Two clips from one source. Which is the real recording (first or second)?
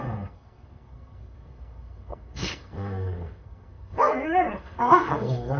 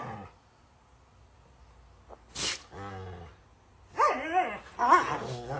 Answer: second